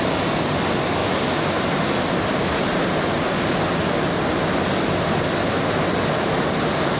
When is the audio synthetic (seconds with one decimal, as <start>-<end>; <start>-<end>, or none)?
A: none